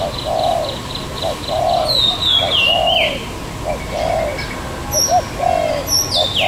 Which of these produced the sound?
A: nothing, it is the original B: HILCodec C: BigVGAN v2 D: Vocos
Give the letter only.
A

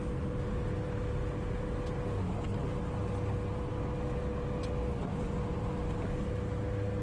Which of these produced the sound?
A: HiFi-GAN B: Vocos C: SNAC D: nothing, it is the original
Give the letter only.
D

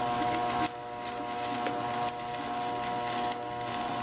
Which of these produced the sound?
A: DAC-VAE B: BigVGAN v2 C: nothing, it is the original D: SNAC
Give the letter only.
C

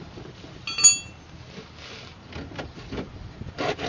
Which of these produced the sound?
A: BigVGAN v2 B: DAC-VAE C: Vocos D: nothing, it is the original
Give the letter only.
D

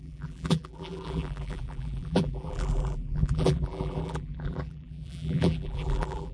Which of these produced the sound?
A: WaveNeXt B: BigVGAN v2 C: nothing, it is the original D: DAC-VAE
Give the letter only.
B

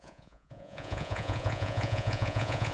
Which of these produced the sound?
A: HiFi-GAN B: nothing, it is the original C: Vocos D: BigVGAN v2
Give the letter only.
C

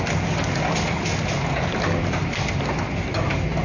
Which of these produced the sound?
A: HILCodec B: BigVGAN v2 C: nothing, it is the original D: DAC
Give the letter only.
C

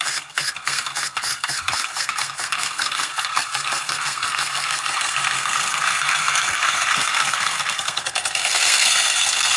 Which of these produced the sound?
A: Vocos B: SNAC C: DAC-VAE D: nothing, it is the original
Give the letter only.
B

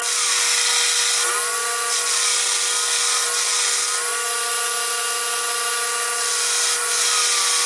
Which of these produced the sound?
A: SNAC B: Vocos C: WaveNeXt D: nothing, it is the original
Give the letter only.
D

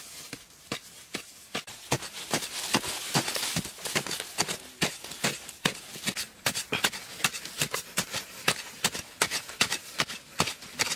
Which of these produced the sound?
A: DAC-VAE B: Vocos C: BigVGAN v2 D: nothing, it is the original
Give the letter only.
D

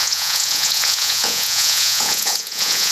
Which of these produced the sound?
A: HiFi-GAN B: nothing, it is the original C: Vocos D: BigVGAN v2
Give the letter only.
C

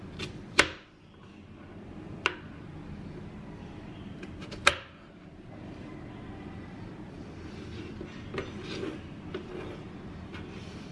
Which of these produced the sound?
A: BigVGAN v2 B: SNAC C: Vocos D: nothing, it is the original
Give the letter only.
D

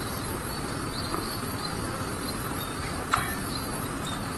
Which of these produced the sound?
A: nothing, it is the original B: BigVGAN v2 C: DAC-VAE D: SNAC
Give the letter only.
B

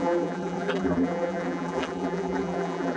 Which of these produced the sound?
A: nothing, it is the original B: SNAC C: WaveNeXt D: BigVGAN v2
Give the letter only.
D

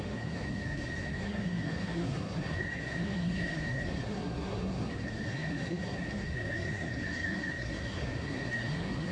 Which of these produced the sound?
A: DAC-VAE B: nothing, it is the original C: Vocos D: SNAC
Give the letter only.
D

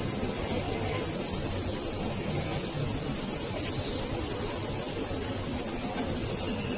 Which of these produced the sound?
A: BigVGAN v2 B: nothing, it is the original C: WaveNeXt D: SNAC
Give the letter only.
B